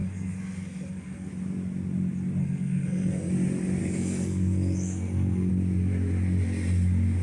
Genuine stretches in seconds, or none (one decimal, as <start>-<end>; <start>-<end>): 1.3-2.4; 3.3-3.8; 5.5-7.2